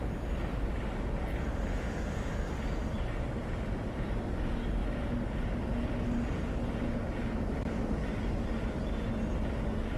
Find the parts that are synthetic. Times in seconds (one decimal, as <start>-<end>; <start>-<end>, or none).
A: 1.7-2.3